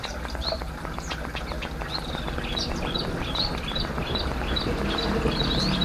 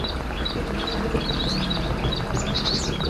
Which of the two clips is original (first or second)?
second